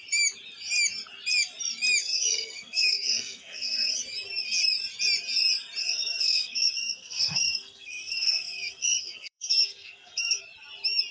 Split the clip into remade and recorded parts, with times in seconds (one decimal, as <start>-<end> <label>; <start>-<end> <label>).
0.0-2.0 recorded; 2.0-4.0 remade; 4.0-5.8 recorded; 5.8-10.4 remade; 10.4-11.1 recorded